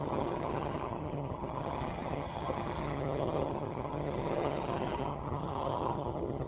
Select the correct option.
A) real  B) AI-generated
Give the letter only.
B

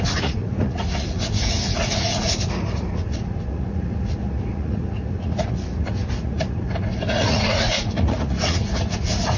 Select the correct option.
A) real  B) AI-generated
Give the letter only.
B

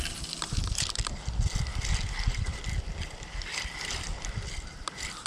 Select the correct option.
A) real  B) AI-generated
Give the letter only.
A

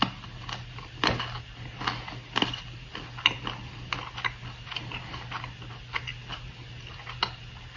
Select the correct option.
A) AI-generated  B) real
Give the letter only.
B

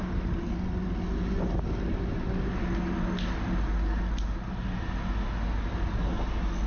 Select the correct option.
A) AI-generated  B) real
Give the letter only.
B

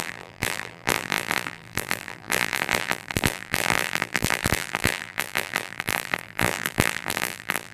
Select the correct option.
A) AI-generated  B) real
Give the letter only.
A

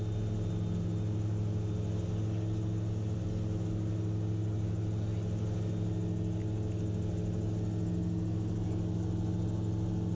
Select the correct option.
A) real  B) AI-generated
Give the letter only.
A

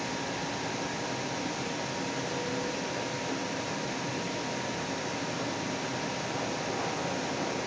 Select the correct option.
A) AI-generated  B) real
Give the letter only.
B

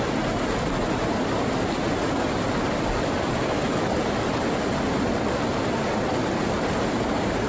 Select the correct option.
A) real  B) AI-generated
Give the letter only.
A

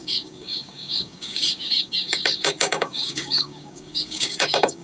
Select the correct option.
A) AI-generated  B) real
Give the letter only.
A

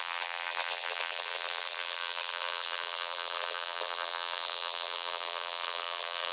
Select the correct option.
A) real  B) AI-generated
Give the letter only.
B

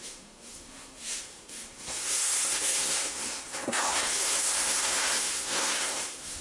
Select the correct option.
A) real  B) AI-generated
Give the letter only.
B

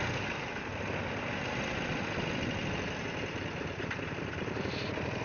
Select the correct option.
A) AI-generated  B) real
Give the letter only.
B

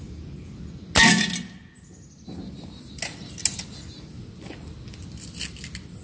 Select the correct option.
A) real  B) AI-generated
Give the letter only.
A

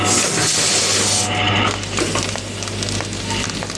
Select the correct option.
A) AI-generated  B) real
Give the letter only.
B